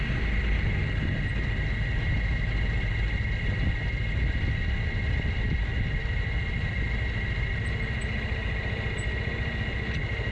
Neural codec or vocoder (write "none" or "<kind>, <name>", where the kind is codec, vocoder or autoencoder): none